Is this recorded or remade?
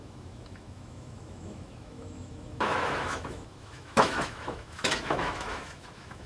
remade